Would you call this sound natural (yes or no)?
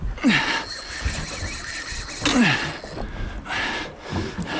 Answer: yes